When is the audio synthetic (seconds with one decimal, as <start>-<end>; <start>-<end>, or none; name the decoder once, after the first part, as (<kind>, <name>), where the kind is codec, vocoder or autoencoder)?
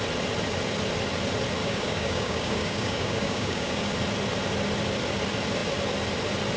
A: 1.6-3.9 (codec, DAC)